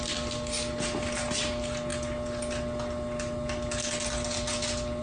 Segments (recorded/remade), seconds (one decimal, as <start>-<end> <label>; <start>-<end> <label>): 0.0-5.0 recorded